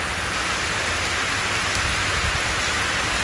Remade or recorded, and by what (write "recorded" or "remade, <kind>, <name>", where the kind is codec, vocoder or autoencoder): recorded